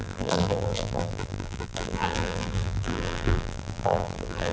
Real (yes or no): no